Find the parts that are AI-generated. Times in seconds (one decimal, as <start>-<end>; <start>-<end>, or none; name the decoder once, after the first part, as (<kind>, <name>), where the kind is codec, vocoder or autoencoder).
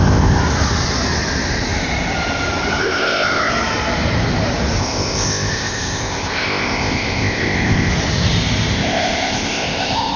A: 0.0-0.4 (codec, ZipCodec); 2.8-3.5; 4.8-7.9; 8.7-10.2